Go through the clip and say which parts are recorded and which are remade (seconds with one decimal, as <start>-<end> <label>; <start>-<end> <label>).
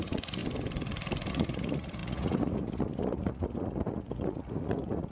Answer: 0.0-0.4 remade; 0.4-1.3 recorded; 1.3-5.1 remade